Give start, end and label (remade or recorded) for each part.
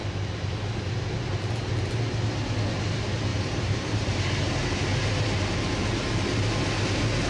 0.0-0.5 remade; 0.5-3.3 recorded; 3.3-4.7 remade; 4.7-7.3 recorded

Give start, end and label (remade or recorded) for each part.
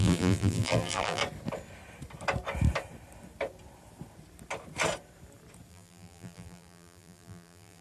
0.0-1.2 remade; 1.2-5.7 recorded; 5.7-7.8 remade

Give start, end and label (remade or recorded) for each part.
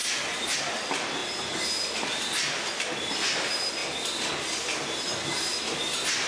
0.0-6.3 recorded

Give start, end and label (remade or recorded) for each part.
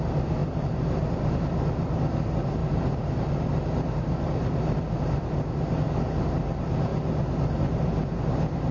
0.0-8.7 remade